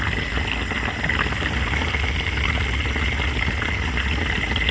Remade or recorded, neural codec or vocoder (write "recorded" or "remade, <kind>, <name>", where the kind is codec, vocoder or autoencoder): recorded